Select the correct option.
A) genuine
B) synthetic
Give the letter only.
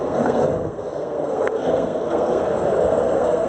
B